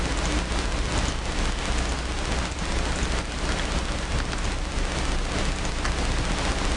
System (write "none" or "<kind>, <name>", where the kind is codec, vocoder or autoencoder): none